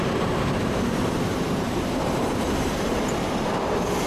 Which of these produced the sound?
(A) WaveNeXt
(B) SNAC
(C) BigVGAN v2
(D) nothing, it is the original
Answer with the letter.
C